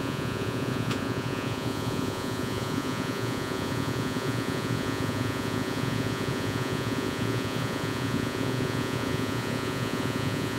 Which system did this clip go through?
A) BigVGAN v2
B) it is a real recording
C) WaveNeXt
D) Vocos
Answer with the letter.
D